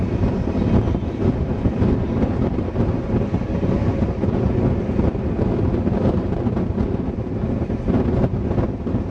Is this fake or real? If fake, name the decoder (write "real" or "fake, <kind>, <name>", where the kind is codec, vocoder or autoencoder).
real